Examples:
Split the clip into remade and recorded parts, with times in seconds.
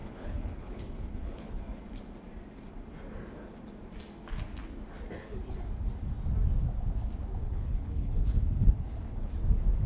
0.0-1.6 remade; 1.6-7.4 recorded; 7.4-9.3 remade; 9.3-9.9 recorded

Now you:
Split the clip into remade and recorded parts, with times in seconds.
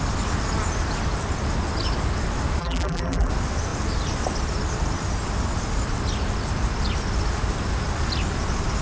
0.0-2.6 recorded; 2.6-3.3 remade; 3.3-8.8 recorded